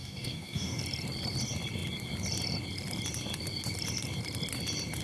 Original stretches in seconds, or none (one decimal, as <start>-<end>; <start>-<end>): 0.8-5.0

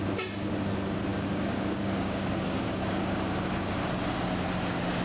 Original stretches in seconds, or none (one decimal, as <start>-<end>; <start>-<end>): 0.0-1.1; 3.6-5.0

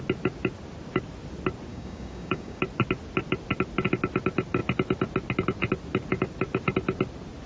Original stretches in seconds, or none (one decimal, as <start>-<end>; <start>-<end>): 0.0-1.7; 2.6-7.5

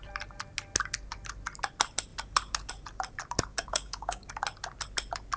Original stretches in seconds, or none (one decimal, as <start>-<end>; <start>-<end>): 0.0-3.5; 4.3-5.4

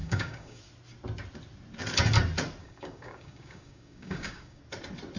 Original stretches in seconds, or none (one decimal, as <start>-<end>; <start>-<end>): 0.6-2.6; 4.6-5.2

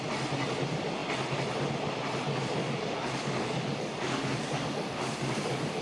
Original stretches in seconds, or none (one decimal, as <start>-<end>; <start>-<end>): 0.0-2.6

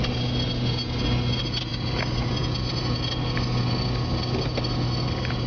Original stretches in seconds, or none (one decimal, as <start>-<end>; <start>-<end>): 0.0-5.5

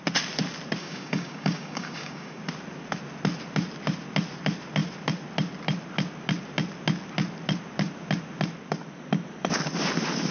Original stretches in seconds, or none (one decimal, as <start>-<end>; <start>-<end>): 0.0-0.8; 2.4-10.3